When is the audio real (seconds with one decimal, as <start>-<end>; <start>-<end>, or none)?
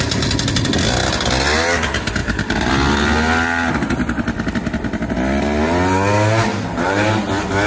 0.0-2.2; 2.7-6.5; 7.2-7.7